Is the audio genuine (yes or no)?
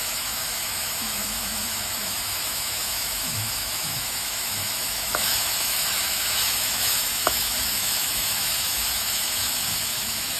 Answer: no